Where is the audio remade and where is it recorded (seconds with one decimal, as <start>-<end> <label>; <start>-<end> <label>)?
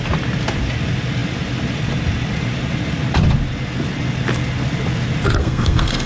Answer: 0.0-5.4 recorded; 5.4-6.1 remade